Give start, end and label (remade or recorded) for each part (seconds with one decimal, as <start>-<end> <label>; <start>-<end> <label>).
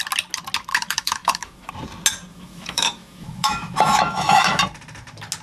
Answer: 0.0-0.7 recorded; 0.7-1.7 remade; 1.7-2.3 recorded; 2.3-4.6 remade; 4.6-5.4 recorded